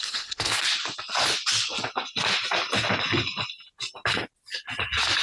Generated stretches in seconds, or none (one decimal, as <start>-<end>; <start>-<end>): 0.0-0.6